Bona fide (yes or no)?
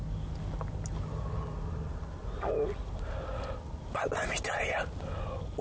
yes